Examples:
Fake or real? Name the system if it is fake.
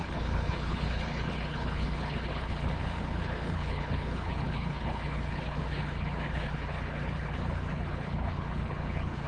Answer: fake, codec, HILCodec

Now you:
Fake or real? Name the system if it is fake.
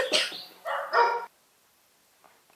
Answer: real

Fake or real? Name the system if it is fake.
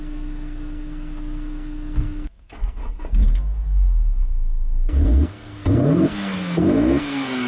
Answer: fake, codec, SNAC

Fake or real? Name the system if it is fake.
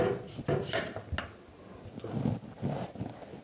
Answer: real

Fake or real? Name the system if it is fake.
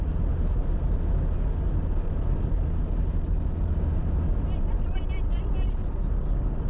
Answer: real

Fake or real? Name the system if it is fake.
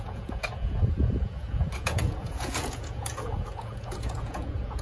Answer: fake, vocoder, Vocos